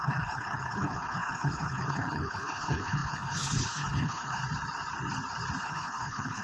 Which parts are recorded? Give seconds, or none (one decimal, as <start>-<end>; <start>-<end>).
4.4-5.6